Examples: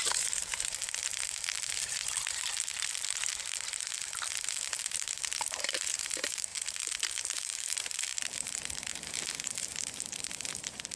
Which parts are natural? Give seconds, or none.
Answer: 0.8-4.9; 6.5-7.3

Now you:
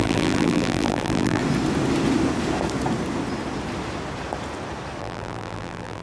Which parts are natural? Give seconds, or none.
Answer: 1.4-5.0

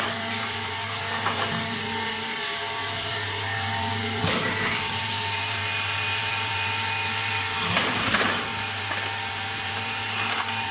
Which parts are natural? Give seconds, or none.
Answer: 5.6-6.2

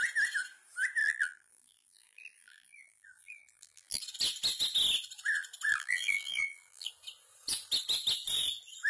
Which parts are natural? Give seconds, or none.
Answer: 0.0-1.0; 4.0-5.7; 6.9-8.9

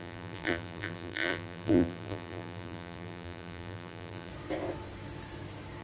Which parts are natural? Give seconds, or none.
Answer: 4.3-5.8

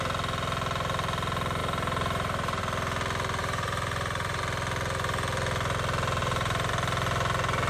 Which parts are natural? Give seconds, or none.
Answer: 0.0-1.6; 2.6-3.4; 4.4-6.2; 6.7-7.7